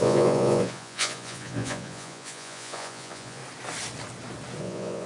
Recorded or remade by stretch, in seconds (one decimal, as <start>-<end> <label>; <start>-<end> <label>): 0.0-3.4 remade; 3.4-4.6 recorded; 4.6-5.1 remade